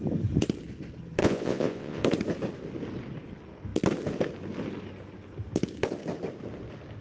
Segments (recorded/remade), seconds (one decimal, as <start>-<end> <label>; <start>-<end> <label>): 0.0-1.2 recorded; 1.2-2.0 remade; 2.0-7.0 recorded